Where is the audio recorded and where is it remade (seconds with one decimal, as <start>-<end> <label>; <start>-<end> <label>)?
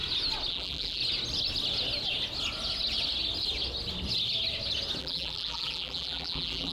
0.0-0.5 recorded; 0.5-1.0 remade; 1.0-5.0 recorded; 5.0-6.7 remade